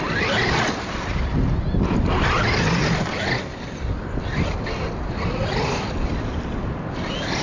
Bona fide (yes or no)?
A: yes